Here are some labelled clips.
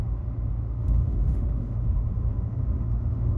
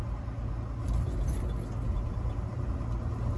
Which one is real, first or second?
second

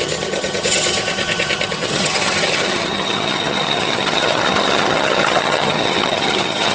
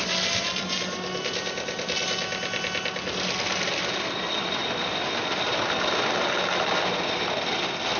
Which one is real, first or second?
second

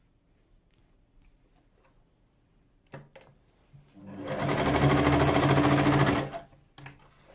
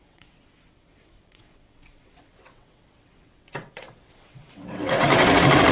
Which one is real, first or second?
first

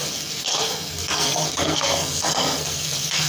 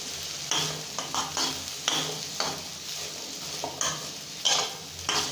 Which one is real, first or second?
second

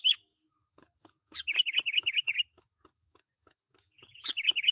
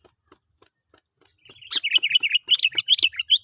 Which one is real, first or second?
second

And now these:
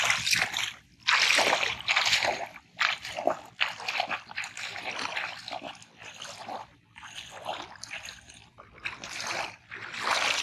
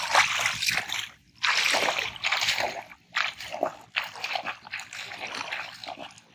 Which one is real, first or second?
first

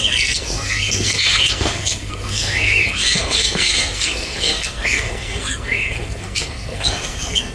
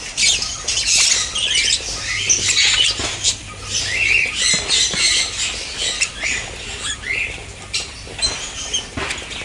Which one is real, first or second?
second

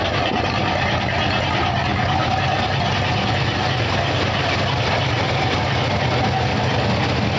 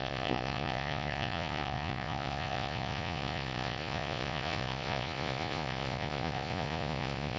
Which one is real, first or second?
first